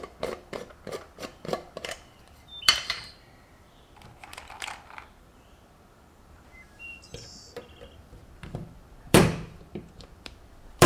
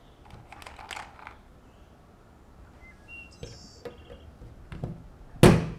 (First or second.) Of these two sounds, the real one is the second